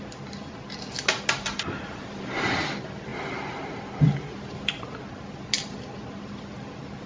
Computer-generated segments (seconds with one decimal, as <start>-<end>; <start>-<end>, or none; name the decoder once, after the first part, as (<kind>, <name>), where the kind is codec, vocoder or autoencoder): none

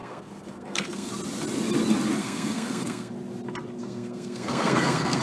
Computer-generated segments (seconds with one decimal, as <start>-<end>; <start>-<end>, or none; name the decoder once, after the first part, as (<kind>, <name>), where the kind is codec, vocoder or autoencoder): 0.0-1.1 (codec, SNAC); 2.2-3.1; 3.8-5.2